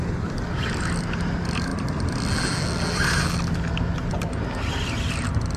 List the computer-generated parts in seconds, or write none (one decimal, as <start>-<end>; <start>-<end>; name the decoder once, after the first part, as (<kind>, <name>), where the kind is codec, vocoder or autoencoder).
none